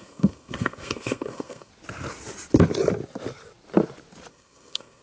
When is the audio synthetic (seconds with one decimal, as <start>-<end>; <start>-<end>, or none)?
0.0-1.7; 4.3-5.0